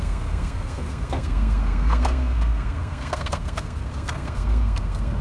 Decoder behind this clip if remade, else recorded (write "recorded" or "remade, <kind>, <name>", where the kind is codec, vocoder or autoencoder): remade, codec, SNAC